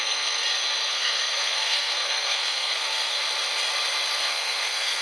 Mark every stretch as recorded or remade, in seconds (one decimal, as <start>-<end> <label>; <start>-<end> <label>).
0.0-0.4 remade; 0.4-0.9 recorded; 0.9-3.2 remade; 3.2-4.2 recorded; 4.2-5.0 remade